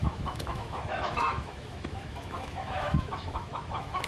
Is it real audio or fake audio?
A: fake